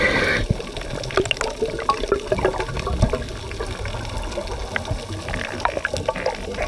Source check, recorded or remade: recorded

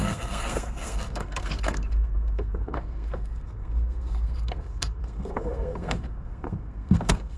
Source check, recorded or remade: remade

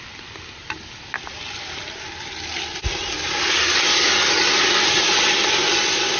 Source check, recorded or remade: recorded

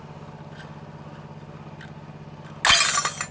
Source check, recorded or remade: recorded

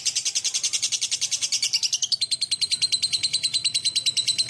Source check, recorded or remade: recorded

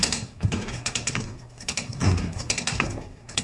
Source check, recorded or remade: remade